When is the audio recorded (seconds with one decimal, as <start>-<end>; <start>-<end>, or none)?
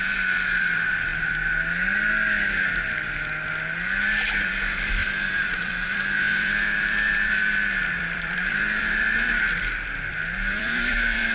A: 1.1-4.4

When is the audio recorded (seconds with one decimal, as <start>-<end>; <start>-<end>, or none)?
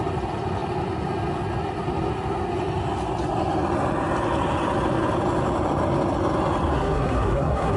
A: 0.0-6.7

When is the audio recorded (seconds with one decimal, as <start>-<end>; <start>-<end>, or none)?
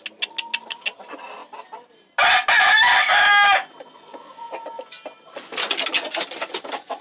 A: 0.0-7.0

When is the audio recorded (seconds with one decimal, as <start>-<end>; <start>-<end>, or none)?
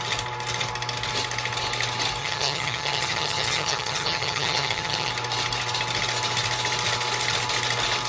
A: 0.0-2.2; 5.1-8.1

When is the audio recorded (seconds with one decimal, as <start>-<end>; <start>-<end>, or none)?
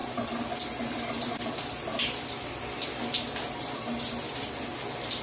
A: 0.0-5.2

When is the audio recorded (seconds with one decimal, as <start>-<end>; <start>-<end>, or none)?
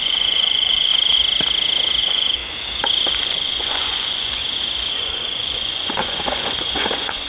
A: 0.9-2.0; 2.4-3.1; 4.4-4.9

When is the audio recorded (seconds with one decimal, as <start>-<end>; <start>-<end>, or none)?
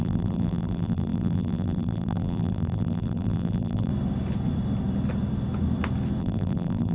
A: 3.9-6.2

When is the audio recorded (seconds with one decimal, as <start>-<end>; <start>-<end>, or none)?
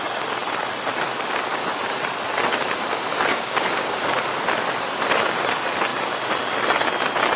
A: 0.0-3.3; 4.2-7.4